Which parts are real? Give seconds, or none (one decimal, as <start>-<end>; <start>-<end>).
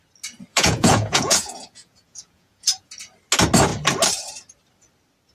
0.0-0.5; 2.9-5.3